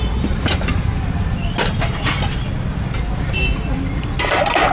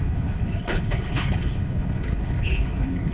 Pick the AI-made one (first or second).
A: second